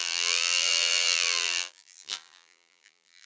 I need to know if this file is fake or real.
fake